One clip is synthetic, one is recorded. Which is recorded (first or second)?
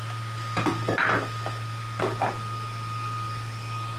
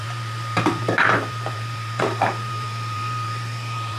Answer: first